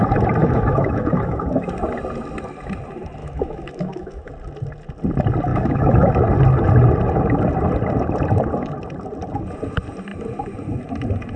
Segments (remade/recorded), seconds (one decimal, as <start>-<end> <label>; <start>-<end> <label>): 0.0-0.4 recorded; 0.4-1.7 remade; 1.7-3.2 recorded; 3.2-4.3 remade; 4.3-5.5 recorded; 5.5-6.1 remade; 6.1-11.4 recorded